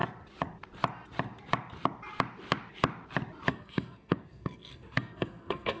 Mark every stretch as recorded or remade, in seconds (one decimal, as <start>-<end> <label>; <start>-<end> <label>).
0.0-3.5 recorded; 3.5-5.8 remade